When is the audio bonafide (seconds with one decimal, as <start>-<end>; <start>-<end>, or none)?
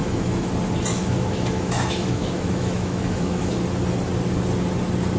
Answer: 0.5-0.9; 3.5-5.2